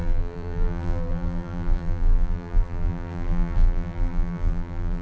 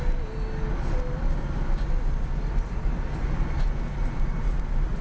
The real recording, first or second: second